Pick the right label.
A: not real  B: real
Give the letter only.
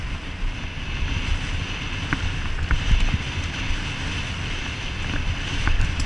B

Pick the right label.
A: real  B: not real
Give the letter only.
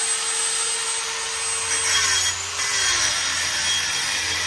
A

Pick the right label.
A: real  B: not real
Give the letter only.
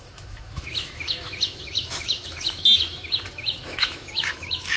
B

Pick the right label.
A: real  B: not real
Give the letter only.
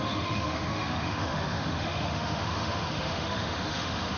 B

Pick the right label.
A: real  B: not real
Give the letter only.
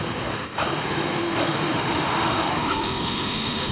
B